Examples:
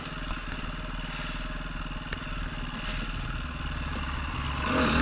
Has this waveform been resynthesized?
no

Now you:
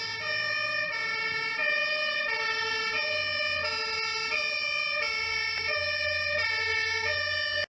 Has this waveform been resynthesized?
no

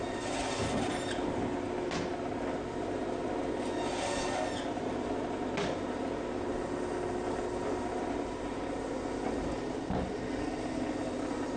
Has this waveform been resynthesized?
no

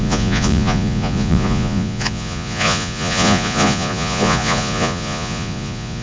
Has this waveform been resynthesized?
yes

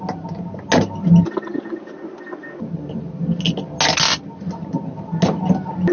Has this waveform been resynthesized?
no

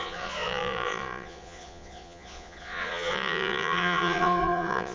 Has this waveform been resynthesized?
yes